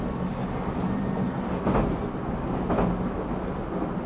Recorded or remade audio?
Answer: recorded